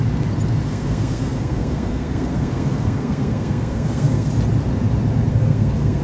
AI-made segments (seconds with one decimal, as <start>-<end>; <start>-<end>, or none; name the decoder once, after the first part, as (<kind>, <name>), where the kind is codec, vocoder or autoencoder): 0.7-4.3 (codec, SNAC); 5.3-6.0